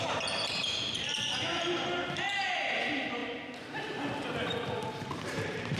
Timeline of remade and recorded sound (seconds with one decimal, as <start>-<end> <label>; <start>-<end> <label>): 0.0-5.8 remade